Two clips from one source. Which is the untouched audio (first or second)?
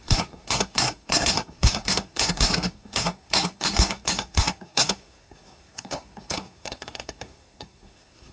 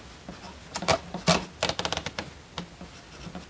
second